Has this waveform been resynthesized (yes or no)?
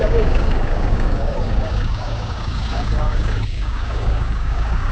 yes